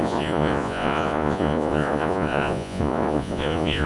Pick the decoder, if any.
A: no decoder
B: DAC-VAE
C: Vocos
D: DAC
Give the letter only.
C